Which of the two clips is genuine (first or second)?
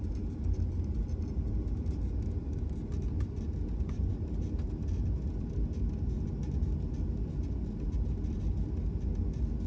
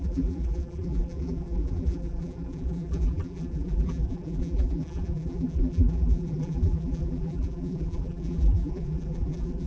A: first